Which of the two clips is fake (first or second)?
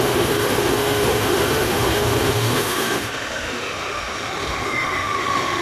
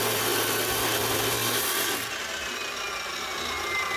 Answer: first